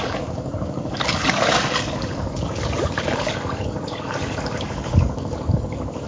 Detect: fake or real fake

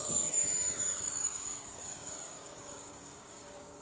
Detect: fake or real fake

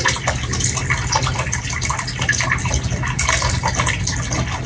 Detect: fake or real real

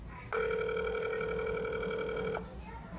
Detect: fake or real real